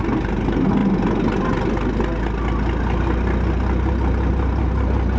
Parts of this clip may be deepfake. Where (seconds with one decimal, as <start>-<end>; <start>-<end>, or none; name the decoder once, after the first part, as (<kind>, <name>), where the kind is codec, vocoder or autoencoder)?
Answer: none